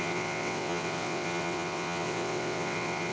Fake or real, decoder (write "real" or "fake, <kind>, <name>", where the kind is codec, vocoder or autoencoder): fake, vocoder, WaveNeXt